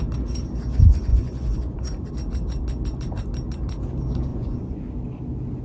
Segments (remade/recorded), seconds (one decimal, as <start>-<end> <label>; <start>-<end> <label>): 0.0-1.1 recorded; 1.1-2.1 remade; 2.1-4.3 recorded; 4.3-4.8 remade; 4.8-5.6 recorded